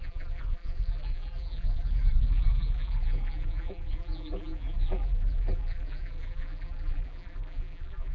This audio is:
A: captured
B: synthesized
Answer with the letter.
B